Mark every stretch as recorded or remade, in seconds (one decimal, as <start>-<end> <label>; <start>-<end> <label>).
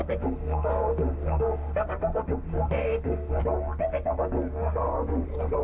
0.0-3.4 remade; 3.4-4.6 recorded; 4.6-5.6 remade